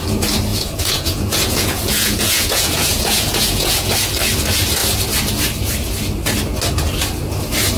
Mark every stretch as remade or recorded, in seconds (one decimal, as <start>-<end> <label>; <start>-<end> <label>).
0.0-0.5 recorded; 0.5-3.9 remade; 3.9-7.8 recorded